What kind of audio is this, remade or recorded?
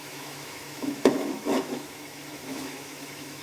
remade